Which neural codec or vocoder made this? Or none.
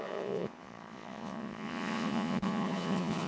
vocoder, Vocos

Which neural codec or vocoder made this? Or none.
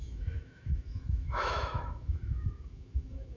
autoencoder, DAC-VAE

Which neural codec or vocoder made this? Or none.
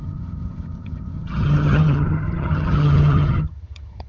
vocoder, HiFi-GAN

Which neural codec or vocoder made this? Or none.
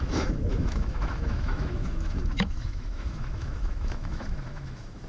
autoencoder, DAC-VAE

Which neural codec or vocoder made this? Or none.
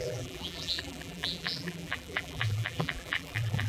vocoder, BigVGAN v2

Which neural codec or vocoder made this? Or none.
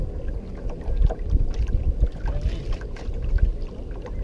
none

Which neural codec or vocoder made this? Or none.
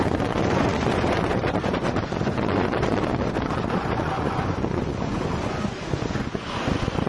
vocoder, Vocos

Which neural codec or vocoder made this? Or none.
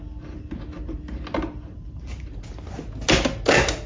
none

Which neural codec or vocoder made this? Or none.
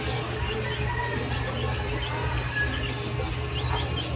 none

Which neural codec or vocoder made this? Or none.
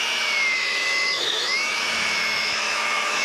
autoencoder, DAC-VAE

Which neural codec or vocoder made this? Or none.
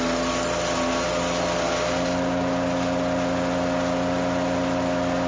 none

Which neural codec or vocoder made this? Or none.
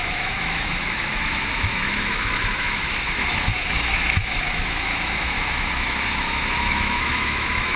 autoencoder, DAC-VAE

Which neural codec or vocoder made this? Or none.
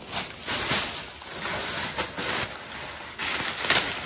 none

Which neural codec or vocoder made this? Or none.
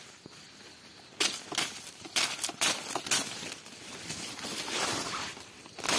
none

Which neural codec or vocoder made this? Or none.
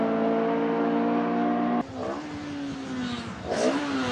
none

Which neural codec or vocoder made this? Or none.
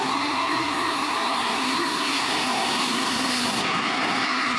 codec, SNAC